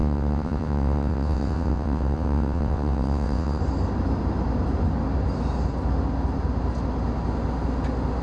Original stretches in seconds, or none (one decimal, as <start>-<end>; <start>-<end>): 3.6-8.2